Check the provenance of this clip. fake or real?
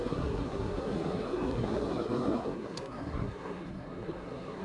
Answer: fake